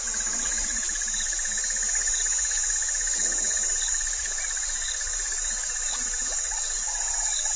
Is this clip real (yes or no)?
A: no